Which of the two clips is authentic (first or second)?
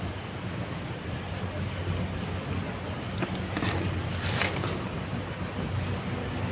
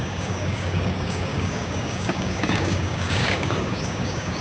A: first